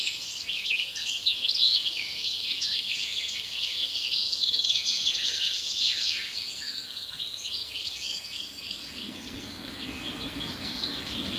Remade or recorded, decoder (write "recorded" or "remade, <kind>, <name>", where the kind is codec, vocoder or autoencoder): remade, codec, SNAC